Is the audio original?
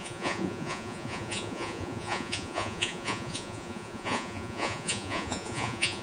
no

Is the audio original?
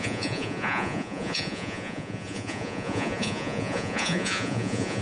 no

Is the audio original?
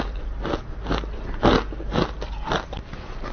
yes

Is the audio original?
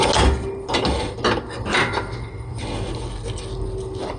yes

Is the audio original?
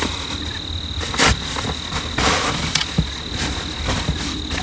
yes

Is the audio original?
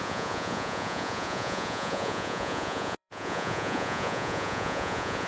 no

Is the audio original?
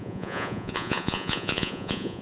no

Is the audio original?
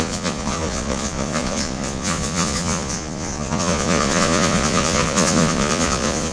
no